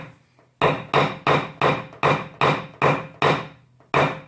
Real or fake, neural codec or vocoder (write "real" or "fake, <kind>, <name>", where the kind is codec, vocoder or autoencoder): real